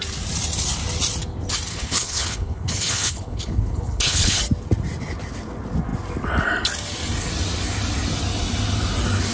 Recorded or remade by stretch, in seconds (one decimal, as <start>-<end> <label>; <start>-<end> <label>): 0.0-1.7 recorded; 1.7-4.4 remade; 4.4-9.3 recorded